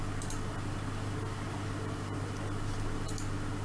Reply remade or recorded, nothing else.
recorded